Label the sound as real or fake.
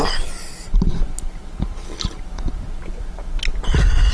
real